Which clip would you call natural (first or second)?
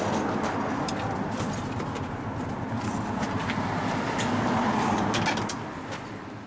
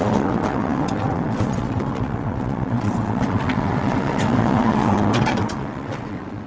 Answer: first